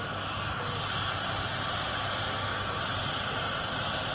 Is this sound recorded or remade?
recorded